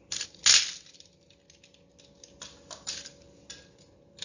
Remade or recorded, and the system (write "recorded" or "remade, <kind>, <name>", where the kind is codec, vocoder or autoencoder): recorded